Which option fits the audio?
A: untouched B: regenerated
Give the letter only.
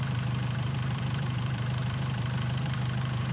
B